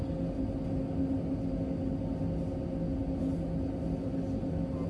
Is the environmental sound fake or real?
real